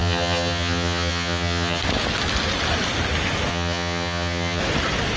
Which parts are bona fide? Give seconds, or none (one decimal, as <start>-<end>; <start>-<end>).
1.8-3.5; 4.6-5.2